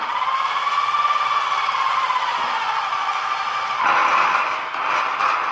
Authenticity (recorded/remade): recorded